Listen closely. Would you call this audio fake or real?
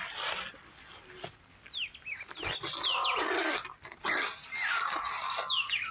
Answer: real